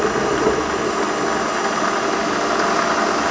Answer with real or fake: real